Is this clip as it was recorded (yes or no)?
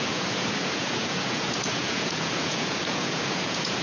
no